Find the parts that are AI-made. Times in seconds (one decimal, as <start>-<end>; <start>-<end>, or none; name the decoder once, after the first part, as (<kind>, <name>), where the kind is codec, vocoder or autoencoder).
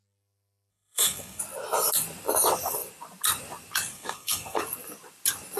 0.7-1.4 (codec, SNAC); 3.9-4.6